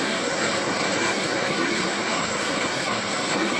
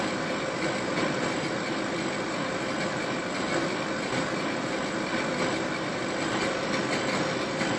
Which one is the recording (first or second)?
second